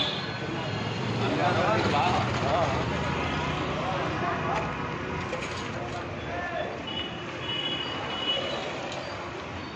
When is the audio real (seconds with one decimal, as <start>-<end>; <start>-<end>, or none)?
0.0-9.8

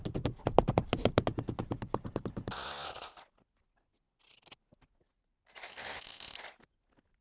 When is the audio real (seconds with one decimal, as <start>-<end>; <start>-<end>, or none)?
0.0-7.2

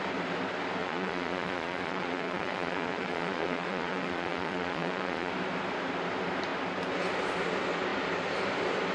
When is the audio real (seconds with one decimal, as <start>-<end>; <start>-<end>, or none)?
0.0-0.8; 5.3-8.9

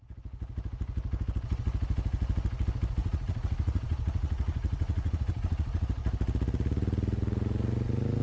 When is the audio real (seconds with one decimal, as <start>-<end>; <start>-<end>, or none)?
0.0-3.0; 5.9-8.2